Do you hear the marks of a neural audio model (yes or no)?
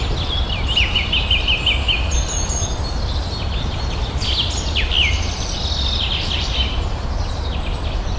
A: no